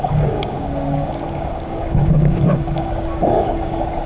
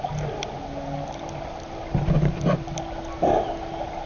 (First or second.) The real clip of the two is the second